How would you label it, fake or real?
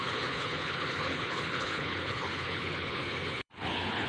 fake